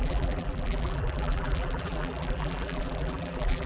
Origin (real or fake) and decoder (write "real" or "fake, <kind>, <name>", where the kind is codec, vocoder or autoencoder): fake, vocoder, BigVGAN v2